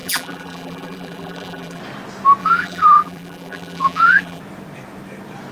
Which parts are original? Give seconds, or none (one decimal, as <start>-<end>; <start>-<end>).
1.8-2.4; 4.4-5.5